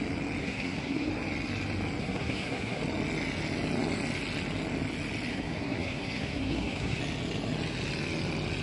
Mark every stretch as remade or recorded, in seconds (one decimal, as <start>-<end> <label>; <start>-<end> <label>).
0.0-0.4 recorded; 0.4-1.1 remade; 1.1-2.0 recorded; 2.0-2.8 remade; 2.8-5.3 recorded; 5.3-7.0 remade; 7.0-8.6 recorded